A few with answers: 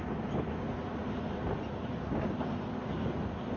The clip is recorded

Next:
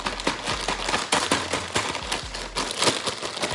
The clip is recorded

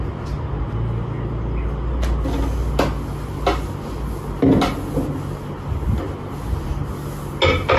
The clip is recorded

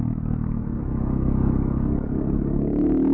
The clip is remade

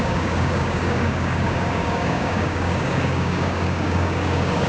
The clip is remade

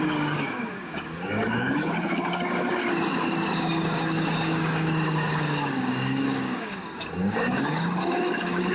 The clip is remade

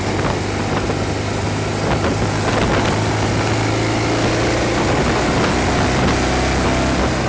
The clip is recorded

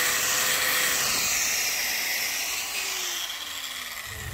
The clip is recorded